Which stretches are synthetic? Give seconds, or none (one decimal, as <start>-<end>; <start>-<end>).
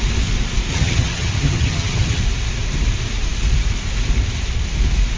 0.7-2.2